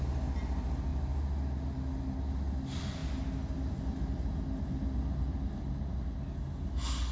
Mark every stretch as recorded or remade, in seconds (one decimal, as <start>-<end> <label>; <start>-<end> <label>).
0.0-7.1 recorded